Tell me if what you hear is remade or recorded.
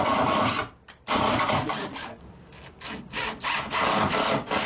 recorded